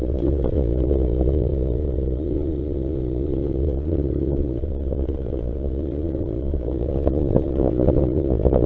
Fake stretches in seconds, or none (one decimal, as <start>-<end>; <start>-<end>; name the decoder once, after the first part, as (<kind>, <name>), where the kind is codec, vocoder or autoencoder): 0.0-8.7 (vocoder, Vocos)